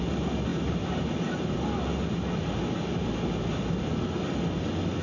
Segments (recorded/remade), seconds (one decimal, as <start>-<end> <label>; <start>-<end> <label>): 0.0-5.0 recorded